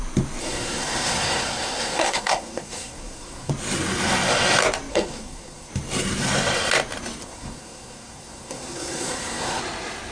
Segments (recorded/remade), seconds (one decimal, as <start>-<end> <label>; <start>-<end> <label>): 0.0-0.4 recorded; 0.4-3.5 remade; 3.5-4.9 recorded; 4.9-5.7 remade; 5.7-7.2 recorded; 7.2-9.6 remade; 9.6-10.1 recorded